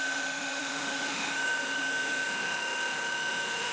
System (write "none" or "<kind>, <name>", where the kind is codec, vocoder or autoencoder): autoencoder, DAC-VAE